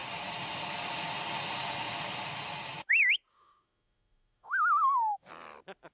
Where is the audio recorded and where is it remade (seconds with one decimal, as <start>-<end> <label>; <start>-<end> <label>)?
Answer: 0.0-3.3 recorded; 3.3-5.3 remade; 5.3-5.9 recorded